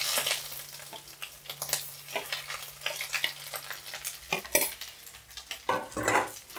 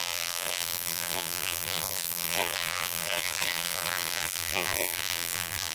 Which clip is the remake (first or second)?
second